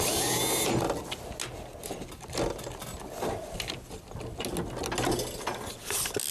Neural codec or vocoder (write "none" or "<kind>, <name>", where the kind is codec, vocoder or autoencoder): none